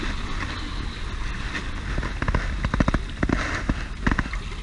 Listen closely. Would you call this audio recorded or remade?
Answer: recorded